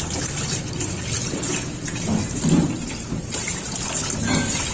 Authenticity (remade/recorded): recorded